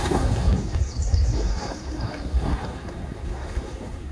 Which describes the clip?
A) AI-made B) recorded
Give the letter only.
A